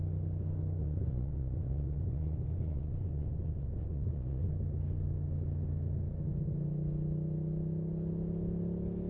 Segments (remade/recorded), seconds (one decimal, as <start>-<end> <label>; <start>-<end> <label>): 0.0-0.8 recorded; 0.8-4.5 remade; 4.5-9.1 recorded